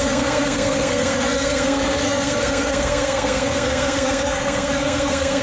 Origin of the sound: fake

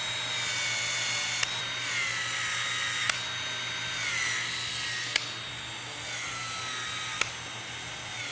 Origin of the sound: real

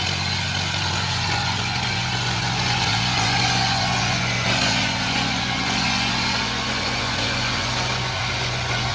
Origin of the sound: fake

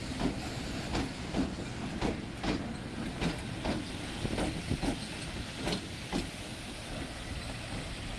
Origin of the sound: real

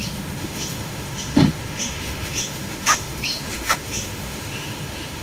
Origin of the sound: fake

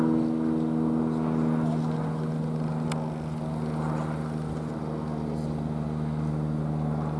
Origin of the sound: real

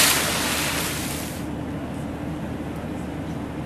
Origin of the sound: real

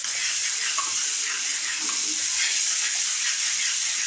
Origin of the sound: real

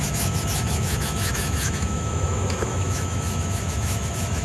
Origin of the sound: fake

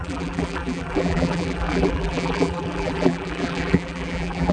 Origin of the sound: fake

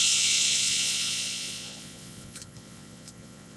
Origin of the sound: fake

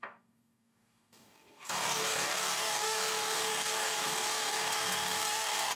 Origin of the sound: fake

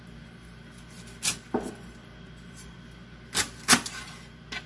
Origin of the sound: real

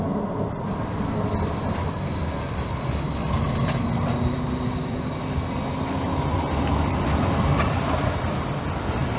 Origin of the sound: real